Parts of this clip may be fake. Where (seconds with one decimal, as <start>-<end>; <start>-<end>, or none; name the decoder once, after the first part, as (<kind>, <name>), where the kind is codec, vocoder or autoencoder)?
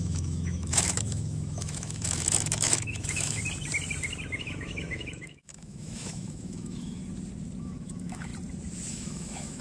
0.0-3.4 (autoencoder, DAC-VAE); 4.4-7.0; 7.6-8.3; 8.9-9.6